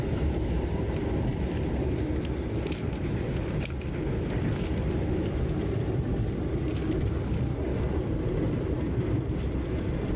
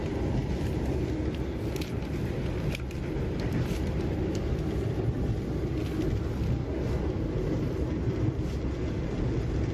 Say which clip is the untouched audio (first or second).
second